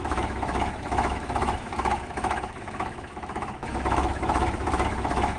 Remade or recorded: remade